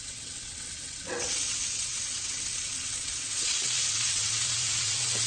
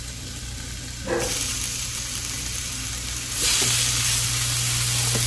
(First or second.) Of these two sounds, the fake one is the first